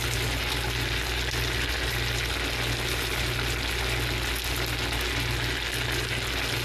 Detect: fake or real real